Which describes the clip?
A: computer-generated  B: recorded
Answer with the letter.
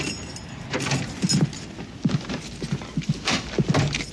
B